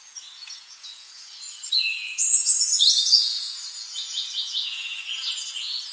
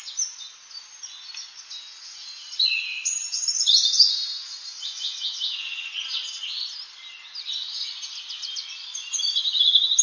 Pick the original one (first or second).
second